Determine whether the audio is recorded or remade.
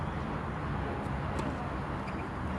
recorded